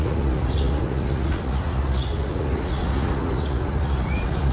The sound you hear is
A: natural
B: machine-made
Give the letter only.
B